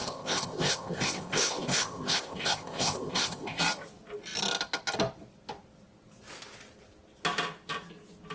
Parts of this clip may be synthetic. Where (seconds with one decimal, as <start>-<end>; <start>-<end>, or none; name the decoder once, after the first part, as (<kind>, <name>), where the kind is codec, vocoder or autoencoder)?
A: 0.0-3.6 (codec, ZipCodec)

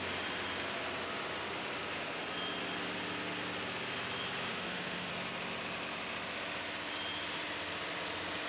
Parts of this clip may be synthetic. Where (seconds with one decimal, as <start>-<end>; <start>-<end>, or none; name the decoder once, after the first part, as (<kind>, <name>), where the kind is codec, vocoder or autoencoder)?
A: 4.5-5.1 (autoencoder, DAC-VAE)

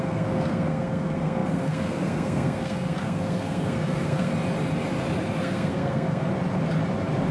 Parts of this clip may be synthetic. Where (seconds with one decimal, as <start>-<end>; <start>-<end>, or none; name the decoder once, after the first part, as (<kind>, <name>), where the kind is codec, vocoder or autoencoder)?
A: 0.0-4.3 (codec, SNAC); 5.4-6.3

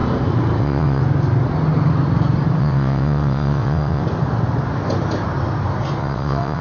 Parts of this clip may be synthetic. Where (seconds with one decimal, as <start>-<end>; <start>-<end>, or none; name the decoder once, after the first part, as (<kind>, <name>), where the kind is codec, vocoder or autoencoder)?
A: 0.6-1.0 (vocoder, WaveNeXt); 2.6-4.0; 6.0-6.6